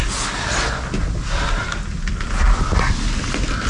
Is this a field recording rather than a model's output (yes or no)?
yes